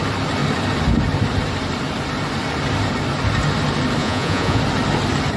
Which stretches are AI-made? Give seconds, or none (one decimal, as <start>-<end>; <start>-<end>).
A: 4.0-4.6